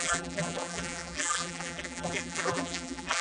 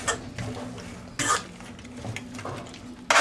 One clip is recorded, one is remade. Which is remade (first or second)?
first